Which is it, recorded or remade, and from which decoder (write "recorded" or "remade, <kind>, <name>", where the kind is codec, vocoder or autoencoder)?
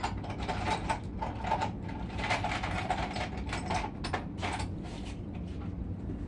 recorded